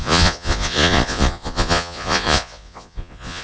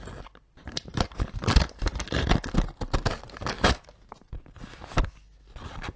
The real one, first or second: second